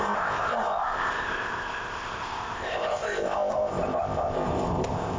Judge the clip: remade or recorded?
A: remade